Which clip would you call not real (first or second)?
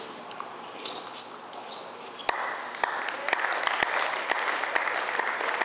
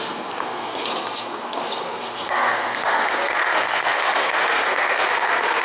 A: second